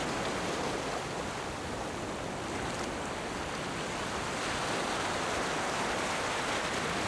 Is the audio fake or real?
real